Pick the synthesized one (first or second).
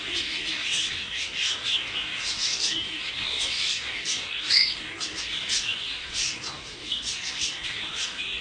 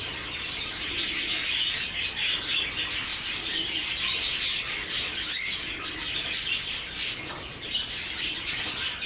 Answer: first